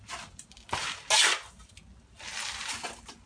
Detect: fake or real real